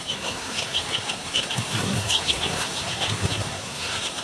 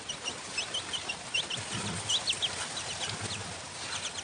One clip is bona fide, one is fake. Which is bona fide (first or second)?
second